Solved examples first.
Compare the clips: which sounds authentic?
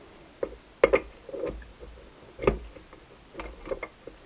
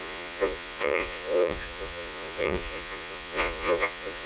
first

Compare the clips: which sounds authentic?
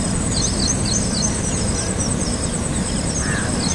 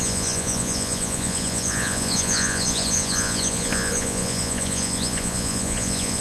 first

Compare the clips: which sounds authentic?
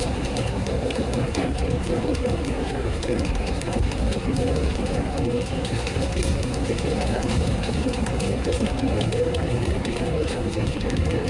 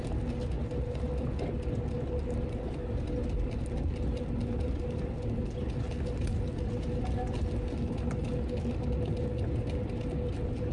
second